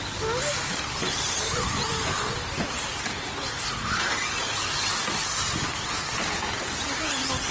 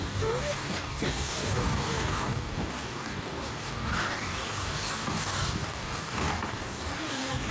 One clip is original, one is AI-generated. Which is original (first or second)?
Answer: first